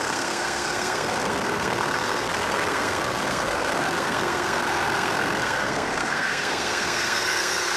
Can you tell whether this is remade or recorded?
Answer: remade